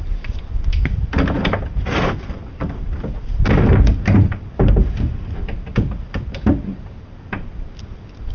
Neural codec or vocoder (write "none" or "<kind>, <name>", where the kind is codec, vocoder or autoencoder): none